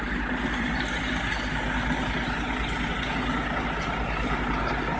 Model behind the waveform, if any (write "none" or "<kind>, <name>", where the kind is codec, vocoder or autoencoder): none